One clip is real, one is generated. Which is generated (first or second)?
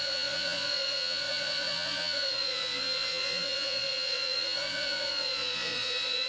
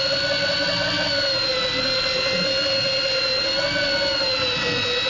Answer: first